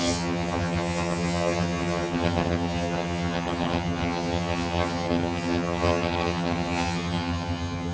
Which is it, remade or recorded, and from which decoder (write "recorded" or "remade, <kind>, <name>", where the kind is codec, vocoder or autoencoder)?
remade, vocoder, HiFi-GAN